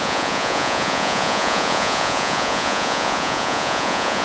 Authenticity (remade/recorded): remade